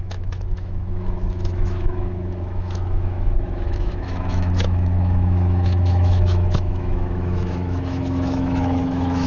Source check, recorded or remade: remade